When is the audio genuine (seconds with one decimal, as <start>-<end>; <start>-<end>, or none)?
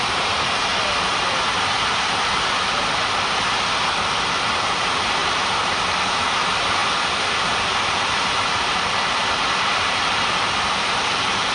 0.7-4.5; 6.8-7.3